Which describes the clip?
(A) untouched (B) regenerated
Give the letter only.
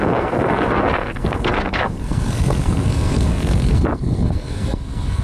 B